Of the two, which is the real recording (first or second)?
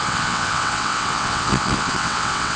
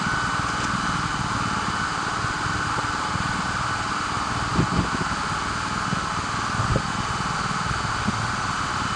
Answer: second